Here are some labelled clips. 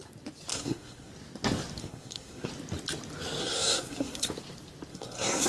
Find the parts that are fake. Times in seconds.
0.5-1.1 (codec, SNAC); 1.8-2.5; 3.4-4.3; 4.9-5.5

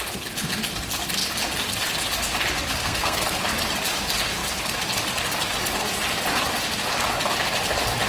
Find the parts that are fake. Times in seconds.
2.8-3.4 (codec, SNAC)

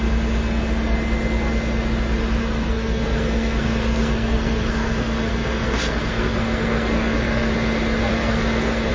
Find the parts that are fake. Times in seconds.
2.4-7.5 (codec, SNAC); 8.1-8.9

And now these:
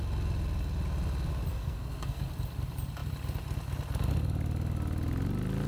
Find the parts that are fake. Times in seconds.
1.5-2.2 (codec, SNAC)

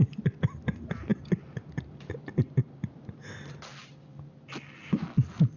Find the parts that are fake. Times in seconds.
none

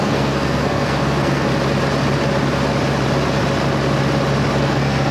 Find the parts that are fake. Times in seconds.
0.0-1.5 (codec, SNAC); 4.6-5.1

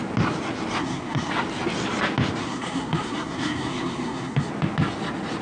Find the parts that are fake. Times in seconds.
0.8-1.3 (codec, SNAC); 2.4-4.5

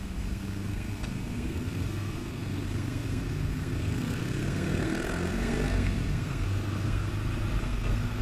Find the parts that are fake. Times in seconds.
0.0-7.1 (codec, SNAC); 7.6-8.2